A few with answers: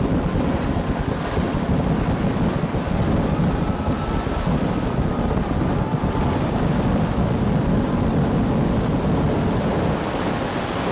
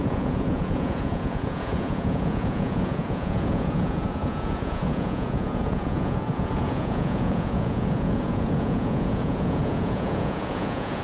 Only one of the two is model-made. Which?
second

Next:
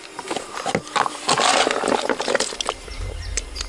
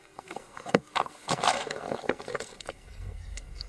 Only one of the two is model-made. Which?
second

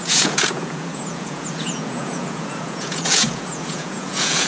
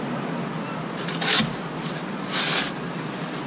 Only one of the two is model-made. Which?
first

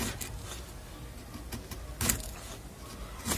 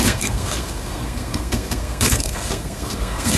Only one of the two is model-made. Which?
second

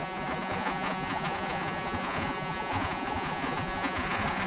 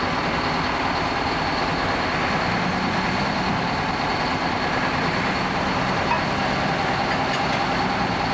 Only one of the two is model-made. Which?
first